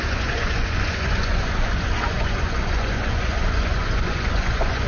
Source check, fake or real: fake